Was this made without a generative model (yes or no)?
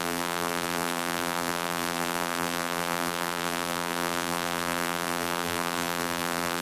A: no